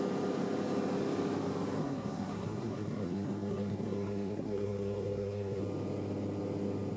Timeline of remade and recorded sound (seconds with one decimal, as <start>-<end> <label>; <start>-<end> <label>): 0.0-1.8 recorded; 1.8-5.6 remade; 5.6-7.0 recorded